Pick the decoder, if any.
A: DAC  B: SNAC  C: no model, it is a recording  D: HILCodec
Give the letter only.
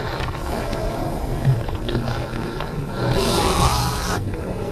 B